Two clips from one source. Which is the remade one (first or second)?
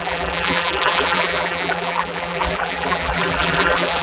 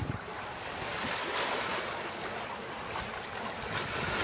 first